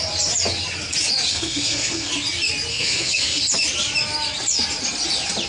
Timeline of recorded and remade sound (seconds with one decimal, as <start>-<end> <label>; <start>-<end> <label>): 0.0-1.3 recorded; 1.3-2.1 remade; 2.1-2.7 recorded; 2.7-3.4 remade; 3.4-5.5 recorded

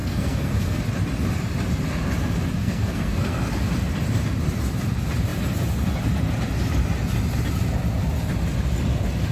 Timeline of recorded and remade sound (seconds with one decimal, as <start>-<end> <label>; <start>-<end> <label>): 0.0-0.8 remade; 0.8-2.6 recorded; 2.6-3.5 remade; 3.5-9.3 recorded